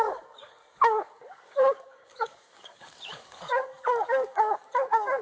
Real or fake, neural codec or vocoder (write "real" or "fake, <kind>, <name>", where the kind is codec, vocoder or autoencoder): fake, codec, DAC